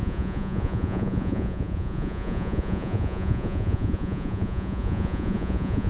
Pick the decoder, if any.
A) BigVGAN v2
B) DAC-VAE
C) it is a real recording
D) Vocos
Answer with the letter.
D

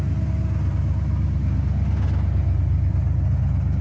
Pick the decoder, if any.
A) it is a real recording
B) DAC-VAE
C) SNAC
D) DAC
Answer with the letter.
A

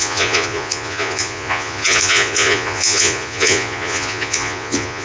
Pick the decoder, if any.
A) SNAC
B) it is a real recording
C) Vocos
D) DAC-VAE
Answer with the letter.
C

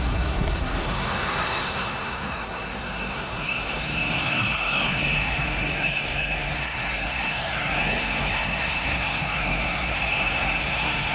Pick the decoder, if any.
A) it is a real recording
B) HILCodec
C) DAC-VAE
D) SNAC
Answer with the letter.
D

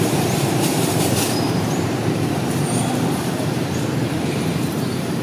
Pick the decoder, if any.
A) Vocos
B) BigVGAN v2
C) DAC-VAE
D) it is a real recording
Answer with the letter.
B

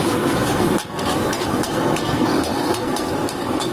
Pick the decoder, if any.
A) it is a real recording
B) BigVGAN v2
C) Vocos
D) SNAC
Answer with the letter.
D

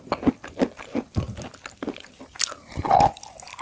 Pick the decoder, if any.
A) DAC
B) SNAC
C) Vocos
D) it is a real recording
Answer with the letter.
D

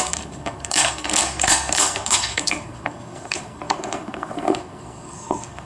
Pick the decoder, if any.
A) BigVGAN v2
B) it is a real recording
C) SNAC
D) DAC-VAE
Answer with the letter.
C